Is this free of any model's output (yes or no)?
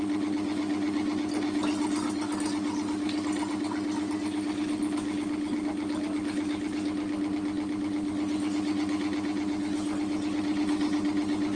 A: yes